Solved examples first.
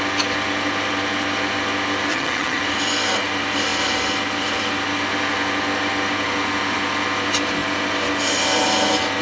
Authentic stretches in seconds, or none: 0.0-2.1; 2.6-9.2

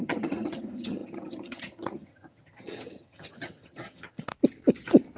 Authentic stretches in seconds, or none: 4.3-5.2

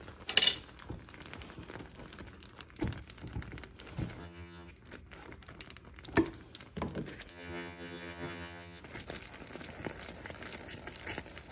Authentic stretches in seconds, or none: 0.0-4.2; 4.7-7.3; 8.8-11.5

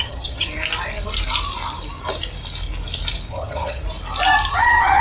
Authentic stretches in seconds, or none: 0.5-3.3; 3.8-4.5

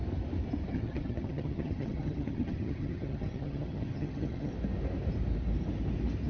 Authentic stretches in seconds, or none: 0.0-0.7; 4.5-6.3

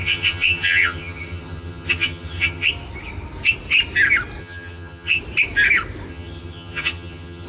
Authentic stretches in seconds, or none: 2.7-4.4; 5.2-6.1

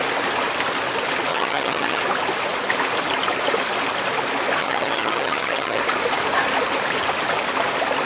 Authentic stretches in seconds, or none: 0.0-1.3; 2.0-4.6; 5.8-8.1

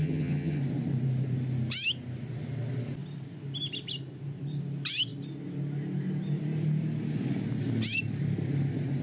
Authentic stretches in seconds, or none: 0.6-9.0